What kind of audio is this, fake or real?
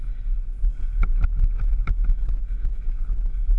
real